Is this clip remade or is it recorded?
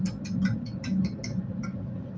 recorded